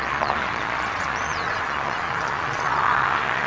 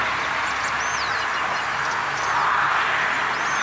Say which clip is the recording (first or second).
second